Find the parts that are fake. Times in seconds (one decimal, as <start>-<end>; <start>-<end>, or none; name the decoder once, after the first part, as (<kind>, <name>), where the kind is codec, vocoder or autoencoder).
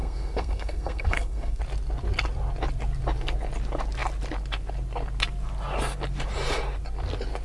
0.0-1.6 (codec, SNAC)